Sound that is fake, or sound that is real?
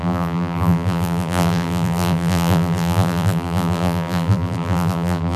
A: fake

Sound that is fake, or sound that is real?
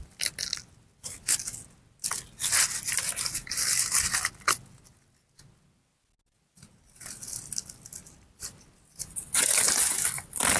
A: real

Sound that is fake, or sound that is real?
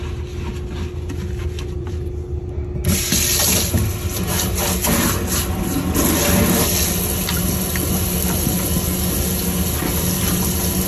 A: real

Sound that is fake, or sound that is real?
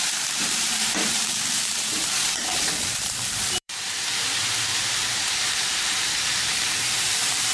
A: fake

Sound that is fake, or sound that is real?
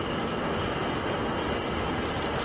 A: real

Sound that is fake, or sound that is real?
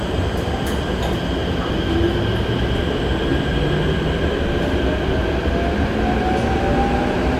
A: real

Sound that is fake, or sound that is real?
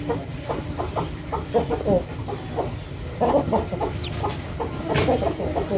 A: real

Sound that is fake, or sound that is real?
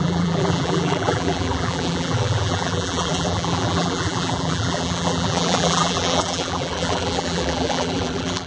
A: fake